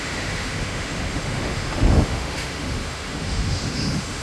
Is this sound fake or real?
fake